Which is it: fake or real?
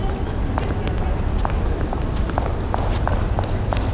real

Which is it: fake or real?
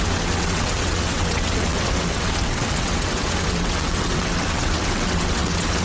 fake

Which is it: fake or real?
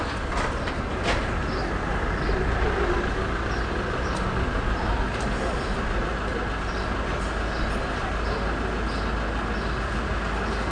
real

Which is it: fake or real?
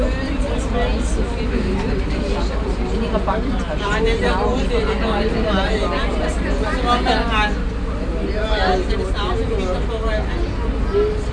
real